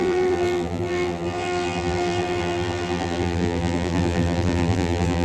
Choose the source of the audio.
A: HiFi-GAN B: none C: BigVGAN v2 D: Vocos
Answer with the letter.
C